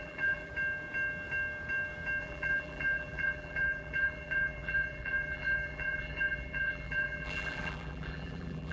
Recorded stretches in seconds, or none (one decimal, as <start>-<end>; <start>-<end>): 0.5-2.2